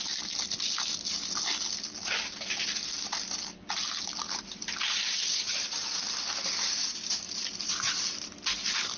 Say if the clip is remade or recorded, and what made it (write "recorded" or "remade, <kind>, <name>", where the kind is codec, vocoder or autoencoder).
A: recorded